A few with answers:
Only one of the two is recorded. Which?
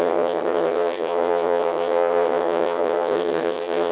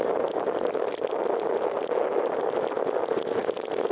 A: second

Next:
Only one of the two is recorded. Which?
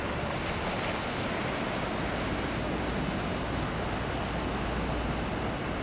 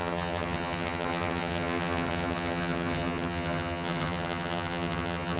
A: first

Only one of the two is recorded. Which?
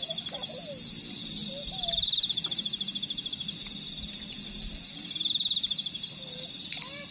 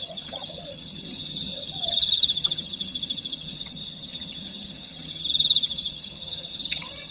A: first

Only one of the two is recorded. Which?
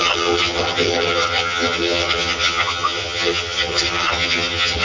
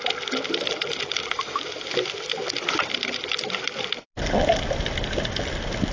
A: second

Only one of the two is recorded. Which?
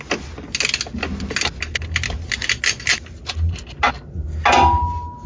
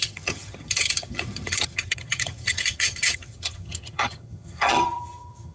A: first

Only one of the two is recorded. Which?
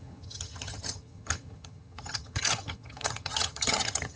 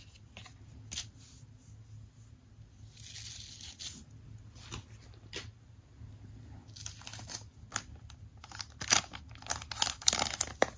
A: second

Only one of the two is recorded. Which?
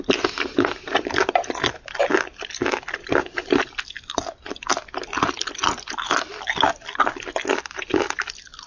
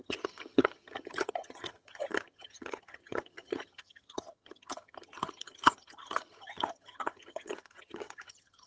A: first